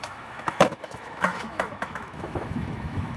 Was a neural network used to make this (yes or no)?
yes